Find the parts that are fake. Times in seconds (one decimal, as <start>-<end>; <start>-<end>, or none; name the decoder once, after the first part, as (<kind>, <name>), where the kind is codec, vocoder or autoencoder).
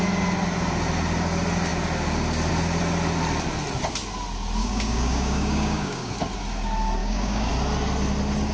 4.6-6.1 (codec, DAC); 7.0-7.5